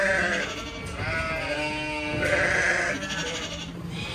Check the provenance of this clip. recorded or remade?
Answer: recorded